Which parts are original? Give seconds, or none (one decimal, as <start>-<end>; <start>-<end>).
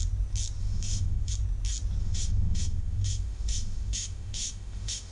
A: 0.0-0.6; 1.3-2.0